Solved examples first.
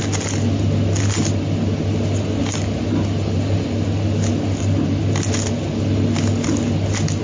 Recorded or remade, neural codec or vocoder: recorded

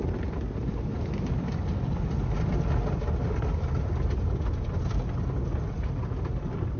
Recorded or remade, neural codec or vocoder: recorded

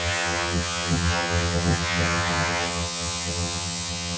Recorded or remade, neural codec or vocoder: remade, vocoder, HiFi-GAN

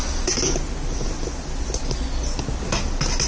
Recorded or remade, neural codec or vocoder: recorded